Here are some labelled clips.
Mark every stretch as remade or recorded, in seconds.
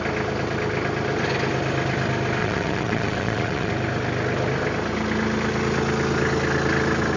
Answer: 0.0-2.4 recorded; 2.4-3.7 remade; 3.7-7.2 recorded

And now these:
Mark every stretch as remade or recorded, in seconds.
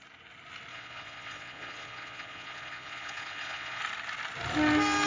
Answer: 0.0-0.7 recorded; 0.7-3.8 remade; 3.8-5.1 recorded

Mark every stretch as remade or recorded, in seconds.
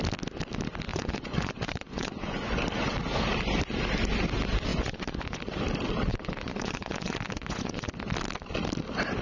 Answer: 0.0-0.9 recorded; 0.9-2.6 remade; 2.6-4.7 recorded; 4.7-5.4 remade; 5.4-6.1 recorded; 6.1-7.9 remade; 7.9-9.2 recorded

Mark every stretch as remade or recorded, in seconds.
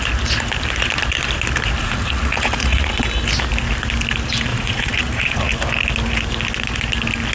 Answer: 0.0-1.8 recorded; 1.8-2.9 remade; 2.9-4.5 recorded; 4.5-5.5 remade; 5.5-7.3 recorded